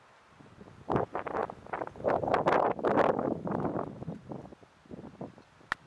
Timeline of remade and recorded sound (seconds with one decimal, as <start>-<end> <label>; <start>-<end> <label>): 0.0-5.9 recorded